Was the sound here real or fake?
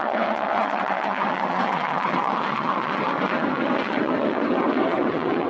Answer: fake